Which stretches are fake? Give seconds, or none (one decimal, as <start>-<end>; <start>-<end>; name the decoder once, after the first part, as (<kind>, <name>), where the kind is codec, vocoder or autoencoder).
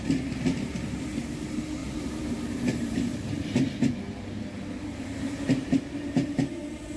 1.8-5.8 (vocoder, BigVGAN v2)